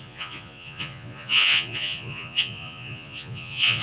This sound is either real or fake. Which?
fake